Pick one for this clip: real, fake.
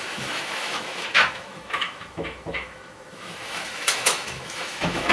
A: fake